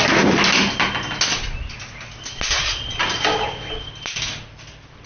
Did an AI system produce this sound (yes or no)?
no